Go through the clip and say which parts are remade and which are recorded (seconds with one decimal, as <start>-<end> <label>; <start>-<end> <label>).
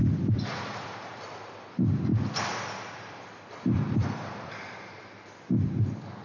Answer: 0.0-1.2 remade; 1.2-2.1 recorded; 2.1-5.8 remade; 5.8-6.2 recorded